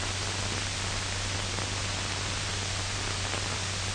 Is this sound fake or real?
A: real